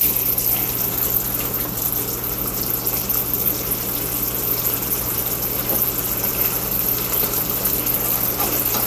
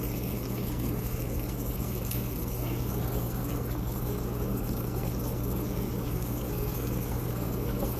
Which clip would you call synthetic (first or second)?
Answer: second